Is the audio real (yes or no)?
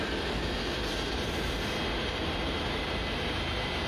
yes